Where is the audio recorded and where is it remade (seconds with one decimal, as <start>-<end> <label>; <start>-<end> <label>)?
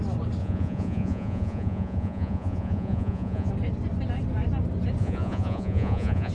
0.0-0.4 recorded; 0.4-3.5 remade; 3.5-5.0 recorded; 5.0-6.3 remade